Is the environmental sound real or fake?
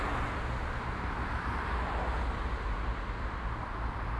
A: real